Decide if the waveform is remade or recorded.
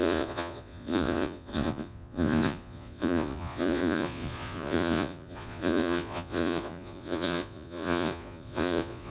remade